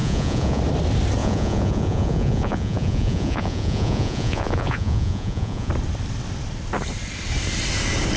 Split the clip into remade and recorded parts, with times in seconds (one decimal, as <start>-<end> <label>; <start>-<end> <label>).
0.0-0.6 remade; 0.6-1.2 recorded; 1.2-5.7 remade; 5.7-8.2 recorded